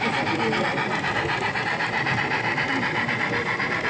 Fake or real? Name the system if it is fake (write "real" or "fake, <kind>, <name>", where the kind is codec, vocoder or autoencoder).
real